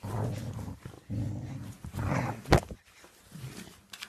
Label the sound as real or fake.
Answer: real